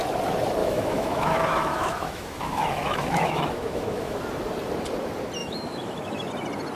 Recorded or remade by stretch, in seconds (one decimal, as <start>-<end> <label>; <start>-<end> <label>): 0.0-0.6 recorded; 0.6-4.2 remade; 4.2-5.4 recorded; 5.4-6.3 remade; 6.3-6.7 recorded